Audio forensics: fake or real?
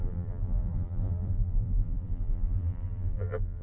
fake